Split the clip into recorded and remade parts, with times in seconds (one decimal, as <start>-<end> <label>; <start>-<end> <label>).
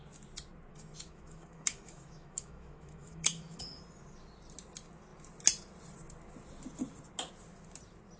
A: 0.0-0.7 recorded; 0.7-3.8 remade; 3.8-8.2 recorded